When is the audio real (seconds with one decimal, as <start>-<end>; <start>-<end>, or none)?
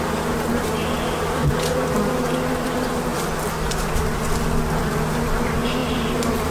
0.0-3.1; 5.2-6.5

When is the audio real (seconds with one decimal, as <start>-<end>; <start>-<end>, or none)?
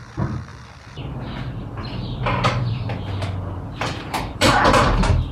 0.0-0.5; 1.2-1.6; 4.8-5.3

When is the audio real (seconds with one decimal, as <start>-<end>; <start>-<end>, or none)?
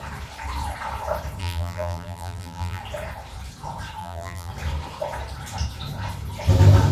0.0-1.4; 2.8-4.0; 4.5-6.9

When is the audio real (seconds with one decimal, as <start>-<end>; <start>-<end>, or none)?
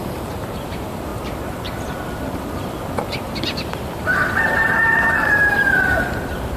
1.1-3.0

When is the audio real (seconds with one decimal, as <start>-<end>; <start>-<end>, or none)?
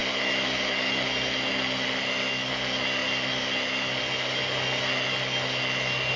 0.0-6.2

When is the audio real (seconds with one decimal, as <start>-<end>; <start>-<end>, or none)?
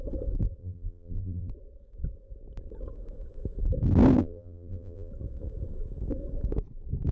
0.0-0.6; 1.5-4.2; 5.1-7.1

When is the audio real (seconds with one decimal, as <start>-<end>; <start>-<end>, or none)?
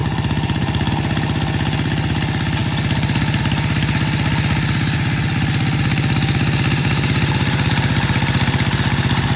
0.9-6.8; 7.7-9.4